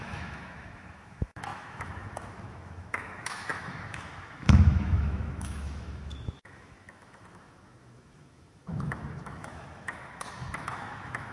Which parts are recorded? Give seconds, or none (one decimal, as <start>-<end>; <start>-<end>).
none